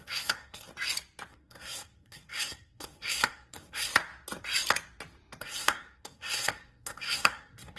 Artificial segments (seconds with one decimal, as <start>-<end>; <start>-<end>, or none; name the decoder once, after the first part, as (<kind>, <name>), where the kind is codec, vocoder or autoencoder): 0.0-0.7 (codec, SNAC); 1.3-3.9; 5.4-7.8